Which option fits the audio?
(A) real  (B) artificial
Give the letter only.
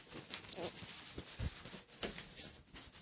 A